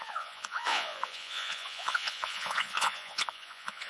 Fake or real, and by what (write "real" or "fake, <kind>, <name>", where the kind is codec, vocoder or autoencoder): fake, vocoder, Vocos